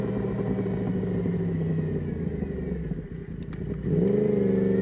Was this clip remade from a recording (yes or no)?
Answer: no